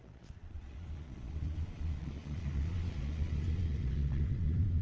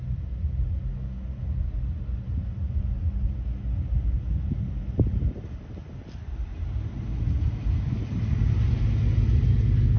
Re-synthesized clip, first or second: first